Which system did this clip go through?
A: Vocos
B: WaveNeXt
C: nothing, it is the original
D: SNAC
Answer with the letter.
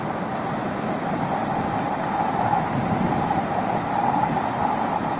C